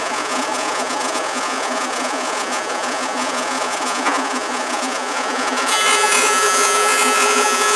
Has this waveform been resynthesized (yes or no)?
yes